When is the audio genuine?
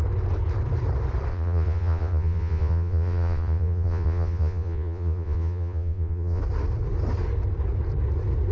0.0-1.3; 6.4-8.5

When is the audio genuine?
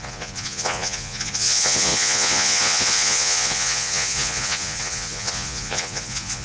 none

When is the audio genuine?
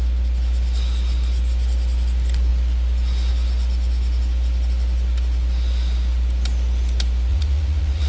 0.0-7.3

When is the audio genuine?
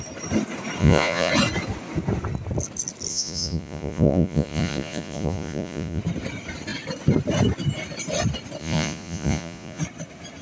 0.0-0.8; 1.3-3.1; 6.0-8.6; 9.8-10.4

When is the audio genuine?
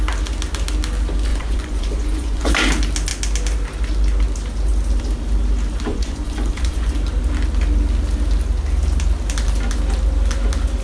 0.0-1.3; 2.5-5.9; 6.9-10.8